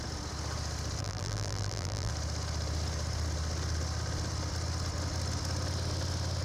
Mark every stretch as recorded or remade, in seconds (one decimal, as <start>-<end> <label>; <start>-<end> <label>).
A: 0.0-1.0 recorded; 1.0-2.1 remade; 2.1-6.4 recorded